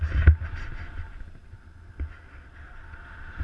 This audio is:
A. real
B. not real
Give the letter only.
A